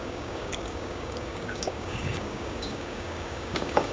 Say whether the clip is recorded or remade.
remade